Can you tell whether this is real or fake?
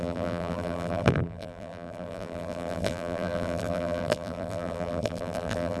fake